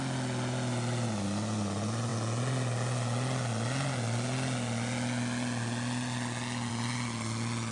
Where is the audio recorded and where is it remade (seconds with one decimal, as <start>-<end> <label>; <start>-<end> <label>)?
0.0-7.7 recorded